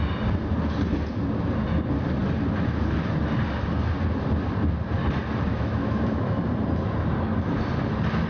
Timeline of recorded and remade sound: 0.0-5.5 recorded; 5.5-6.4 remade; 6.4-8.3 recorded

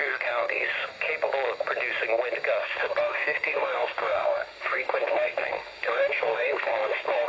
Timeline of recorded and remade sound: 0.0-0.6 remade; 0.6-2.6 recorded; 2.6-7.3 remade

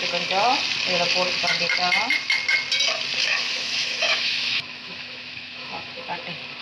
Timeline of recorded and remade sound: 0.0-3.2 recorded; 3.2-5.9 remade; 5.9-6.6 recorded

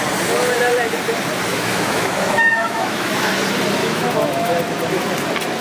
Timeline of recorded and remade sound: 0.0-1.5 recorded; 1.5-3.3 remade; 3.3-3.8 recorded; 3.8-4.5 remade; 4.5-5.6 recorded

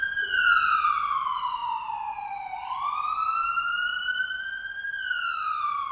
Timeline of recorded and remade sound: 0.0-5.9 recorded

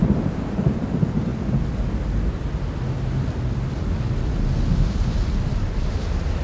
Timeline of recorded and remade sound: 0.0-6.4 recorded

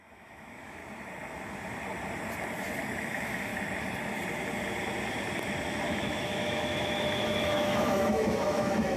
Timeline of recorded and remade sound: 0.0-0.8 remade; 0.8-3.0 recorded; 3.0-3.5 remade; 3.5-5.9 recorded; 5.9-9.0 remade